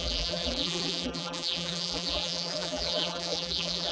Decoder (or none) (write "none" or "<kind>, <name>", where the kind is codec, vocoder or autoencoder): vocoder, BigVGAN v2